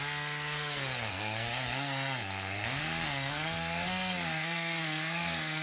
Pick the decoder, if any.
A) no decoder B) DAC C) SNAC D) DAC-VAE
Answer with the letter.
C